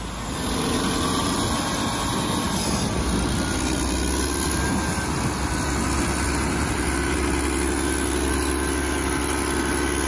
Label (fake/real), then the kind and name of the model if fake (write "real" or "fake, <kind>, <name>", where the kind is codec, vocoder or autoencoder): real